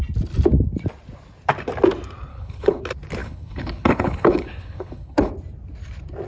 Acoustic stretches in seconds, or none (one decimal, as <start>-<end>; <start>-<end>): 0.0-2.3; 2.8-3.2; 5.3-6.3